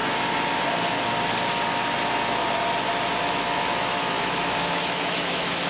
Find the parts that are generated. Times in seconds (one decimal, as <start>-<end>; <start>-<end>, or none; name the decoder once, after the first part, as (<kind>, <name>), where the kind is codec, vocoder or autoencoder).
3.3-5.7 (autoencoder, DAC-VAE)